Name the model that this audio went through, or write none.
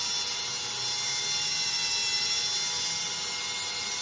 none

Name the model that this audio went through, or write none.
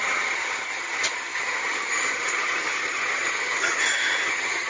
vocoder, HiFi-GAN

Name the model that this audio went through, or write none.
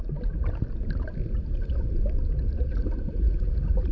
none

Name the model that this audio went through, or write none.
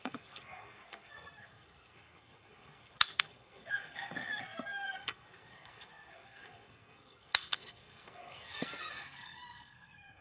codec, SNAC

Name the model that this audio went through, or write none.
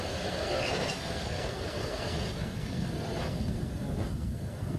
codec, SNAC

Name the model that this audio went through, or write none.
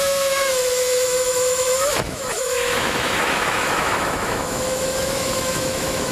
autoencoder, DAC-VAE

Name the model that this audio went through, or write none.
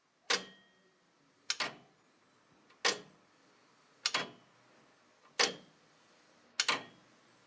none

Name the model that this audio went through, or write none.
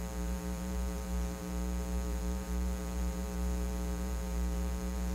vocoder, BigVGAN v2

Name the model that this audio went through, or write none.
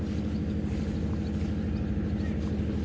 none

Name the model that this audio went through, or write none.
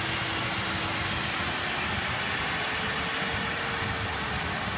none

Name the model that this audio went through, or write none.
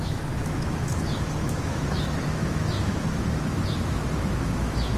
autoencoder, DAC-VAE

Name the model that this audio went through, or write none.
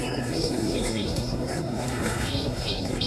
codec, SNAC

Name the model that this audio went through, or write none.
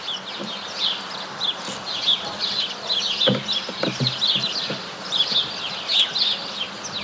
none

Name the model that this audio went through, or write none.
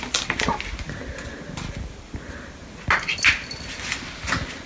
none